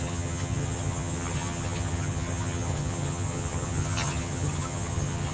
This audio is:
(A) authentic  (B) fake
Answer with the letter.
B